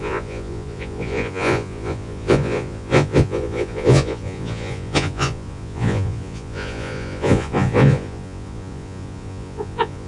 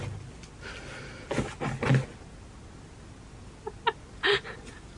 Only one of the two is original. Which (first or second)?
second